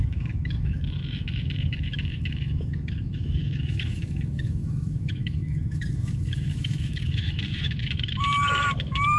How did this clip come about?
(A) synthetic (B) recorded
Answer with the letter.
A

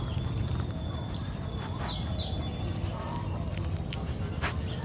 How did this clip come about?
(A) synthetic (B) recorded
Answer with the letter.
B